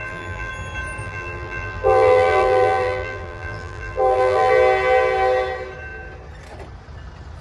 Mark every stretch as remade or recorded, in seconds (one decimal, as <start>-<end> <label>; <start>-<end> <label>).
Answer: 0.0-0.5 remade; 0.5-1.0 recorded; 1.0-4.5 remade; 4.5-7.4 recorded

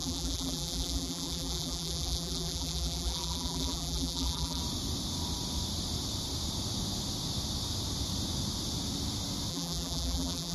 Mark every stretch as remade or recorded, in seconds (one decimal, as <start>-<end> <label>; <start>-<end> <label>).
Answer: 0.0-4.6 remade; 4.6-9.5 recorded; 9.5-10.5 remade

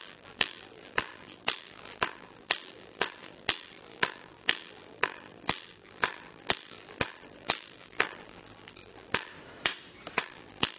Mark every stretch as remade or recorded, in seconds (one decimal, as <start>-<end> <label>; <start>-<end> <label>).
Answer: 0.0-9.3 remade; 9.3-10.2 recorded; 10.2-10.8 remade

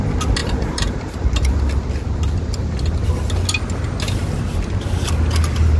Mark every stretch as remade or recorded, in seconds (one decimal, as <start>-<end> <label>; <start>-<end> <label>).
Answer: 0.0-0.4 recorded; 0.4-1.6 remade; 1.6-5.8 recorded

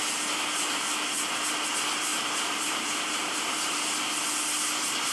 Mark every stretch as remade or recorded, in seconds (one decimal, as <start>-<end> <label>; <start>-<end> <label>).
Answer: 0.0-2.1 recorded; 2.1-3.9 remade; 3.9-5.1 recorded

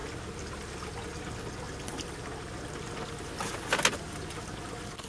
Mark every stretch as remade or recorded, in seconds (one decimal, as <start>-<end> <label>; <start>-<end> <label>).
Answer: 0.0-5.1 recorded

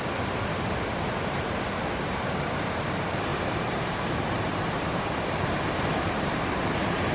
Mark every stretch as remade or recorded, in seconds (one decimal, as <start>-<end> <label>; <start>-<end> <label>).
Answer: 0.0-3.3 recorded; 3.3-6.1 remade; 6.1-7.1 recorded